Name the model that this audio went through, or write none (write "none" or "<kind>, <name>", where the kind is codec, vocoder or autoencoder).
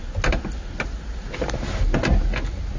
none